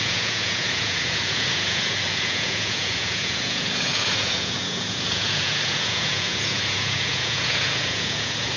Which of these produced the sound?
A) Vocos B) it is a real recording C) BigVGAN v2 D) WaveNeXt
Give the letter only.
A